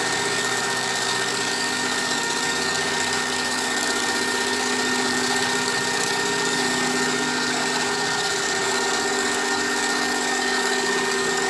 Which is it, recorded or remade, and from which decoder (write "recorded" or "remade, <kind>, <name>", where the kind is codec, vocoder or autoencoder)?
remade, codec, DAC